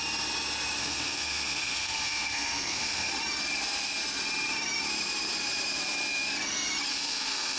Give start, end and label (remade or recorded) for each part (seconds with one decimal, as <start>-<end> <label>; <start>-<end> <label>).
0.0-0.8 recorded; 0.8-3.1 remade; 3.1-6.9 recorded; 6.9-7.6 remade